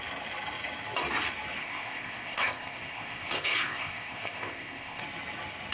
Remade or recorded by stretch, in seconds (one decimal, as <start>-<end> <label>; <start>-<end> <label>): 0.0-1.6 recorded; 1.6-5.0 remade; 5.0-5.7 recorded